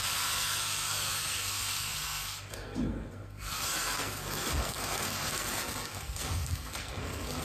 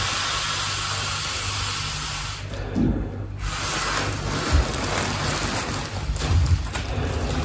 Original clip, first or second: second